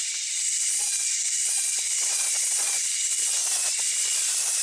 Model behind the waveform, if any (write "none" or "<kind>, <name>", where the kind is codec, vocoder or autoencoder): vocoder, Vocos